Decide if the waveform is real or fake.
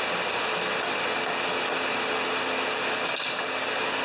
real